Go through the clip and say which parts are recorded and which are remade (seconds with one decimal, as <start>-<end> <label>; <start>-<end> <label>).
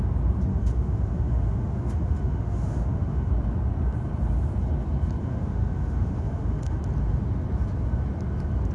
0.0-0.5 recorded; 0.5-3.3 remade; 3.3-5.2 recorded; 5.2-6.8 remade; 6.8-8.7 recorded